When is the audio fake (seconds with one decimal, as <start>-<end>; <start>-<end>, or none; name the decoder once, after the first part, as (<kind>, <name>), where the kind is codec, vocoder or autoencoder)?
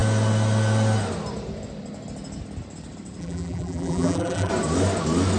3.2-4.5 (vocoder, BigVGAN v2)